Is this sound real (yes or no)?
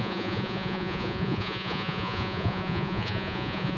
no